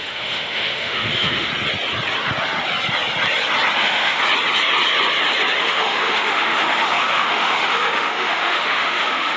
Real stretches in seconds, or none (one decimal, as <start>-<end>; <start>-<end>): 1.5-3.8; 4.2-5.6